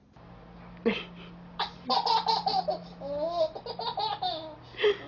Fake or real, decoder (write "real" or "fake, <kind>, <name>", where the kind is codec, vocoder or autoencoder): real